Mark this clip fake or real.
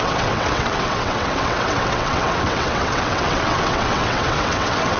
fake